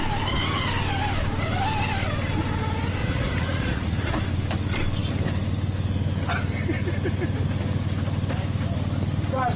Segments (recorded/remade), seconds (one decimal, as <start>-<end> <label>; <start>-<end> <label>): 0.0-3.0 recorded; 3.0-4.2 remade; 4.2-9.6 recorded